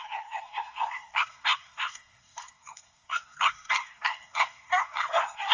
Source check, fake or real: fake